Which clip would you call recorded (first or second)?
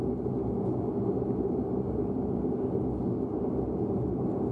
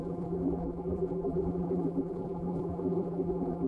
first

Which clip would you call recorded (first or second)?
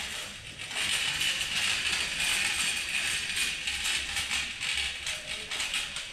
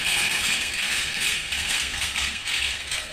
first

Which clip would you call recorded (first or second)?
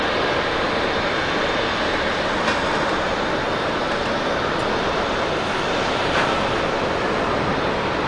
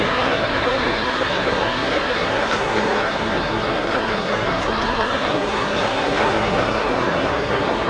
first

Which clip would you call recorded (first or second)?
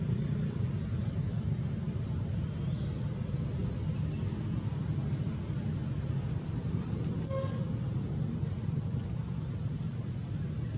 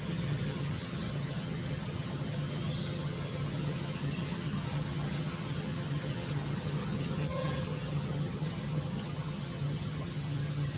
first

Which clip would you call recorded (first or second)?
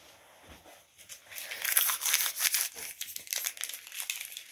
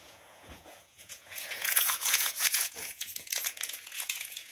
first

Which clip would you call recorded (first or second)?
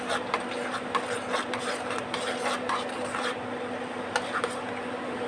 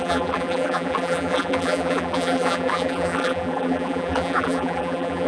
first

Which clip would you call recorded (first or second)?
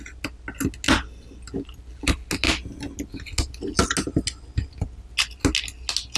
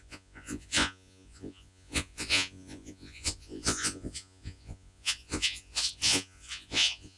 first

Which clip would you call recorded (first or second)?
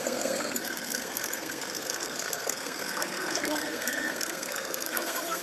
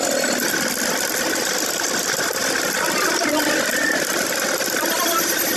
second